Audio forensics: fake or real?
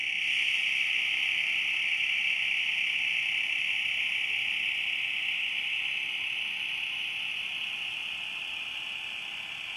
real